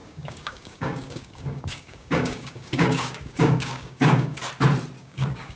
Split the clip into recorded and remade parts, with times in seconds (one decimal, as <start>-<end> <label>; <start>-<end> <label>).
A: 0.0-4.4 remade; 4.4-5.0 recorded; 5.0-5.6 remade